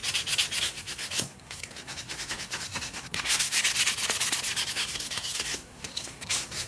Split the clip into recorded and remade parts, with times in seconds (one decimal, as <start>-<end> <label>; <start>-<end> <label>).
0.0-0.6 recorded; 0.6-3.6 remade; 3.6-4.7 recorded; 4.7-6.7 remade